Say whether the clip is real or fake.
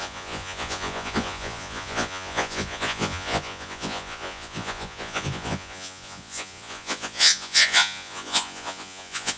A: fake